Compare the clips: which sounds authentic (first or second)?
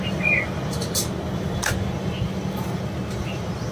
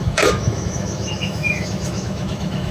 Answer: first